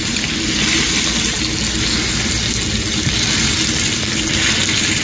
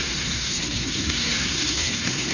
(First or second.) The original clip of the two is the first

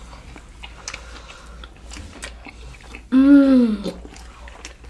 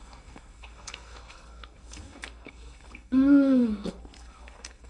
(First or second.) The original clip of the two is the first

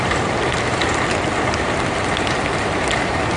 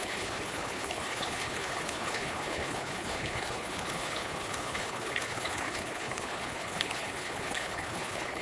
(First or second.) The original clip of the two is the first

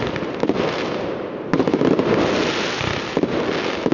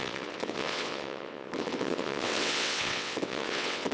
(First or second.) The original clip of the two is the first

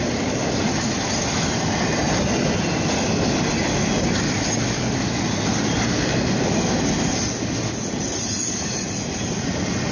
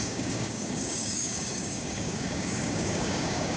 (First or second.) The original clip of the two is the first